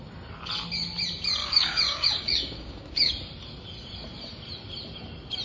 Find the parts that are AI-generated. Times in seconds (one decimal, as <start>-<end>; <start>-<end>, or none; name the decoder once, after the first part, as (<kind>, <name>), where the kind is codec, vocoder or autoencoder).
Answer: 1.4-3.1 (codec, DAC)